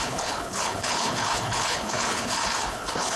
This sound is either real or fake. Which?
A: fake